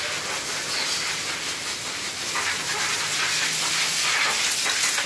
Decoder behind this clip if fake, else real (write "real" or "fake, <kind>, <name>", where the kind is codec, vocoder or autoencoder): real